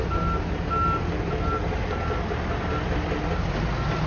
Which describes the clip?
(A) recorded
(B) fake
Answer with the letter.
A